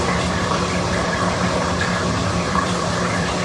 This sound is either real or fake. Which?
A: fake